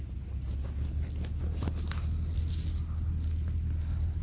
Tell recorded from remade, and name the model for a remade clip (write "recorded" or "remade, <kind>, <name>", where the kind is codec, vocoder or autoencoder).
recorded